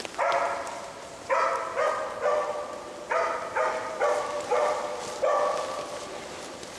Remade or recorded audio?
recorded